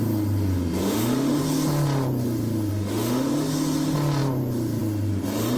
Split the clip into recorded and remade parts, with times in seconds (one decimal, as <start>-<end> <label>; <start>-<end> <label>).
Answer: 0.0-0.8 recorded; 0.8-1.4 remade; 1.4-2.7 recorded; 2.7-3.3 remade; 3.3-5.6 recorded